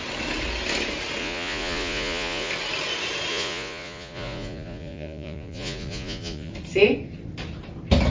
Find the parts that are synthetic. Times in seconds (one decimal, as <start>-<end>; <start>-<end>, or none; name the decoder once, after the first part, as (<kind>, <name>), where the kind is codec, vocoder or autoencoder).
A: 1.2-2.5 (vocoder, Vocos); 3.3-6.5